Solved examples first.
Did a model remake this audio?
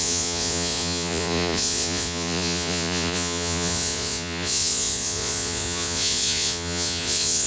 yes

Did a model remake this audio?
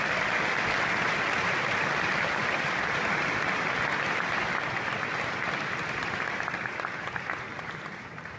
no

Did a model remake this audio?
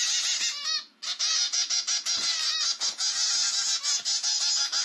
no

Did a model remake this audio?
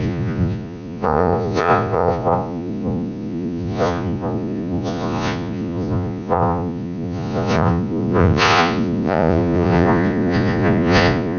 yes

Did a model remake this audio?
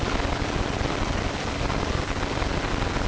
no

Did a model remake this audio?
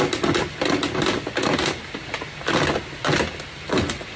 no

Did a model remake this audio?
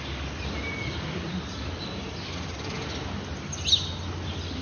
no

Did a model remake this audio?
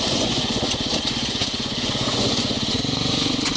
yes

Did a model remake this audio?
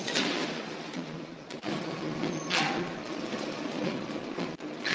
yes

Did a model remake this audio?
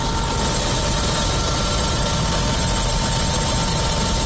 no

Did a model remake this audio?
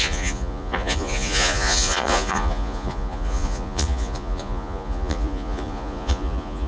yes